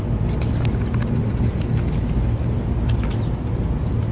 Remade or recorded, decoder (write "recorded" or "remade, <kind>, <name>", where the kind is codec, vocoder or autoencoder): recorded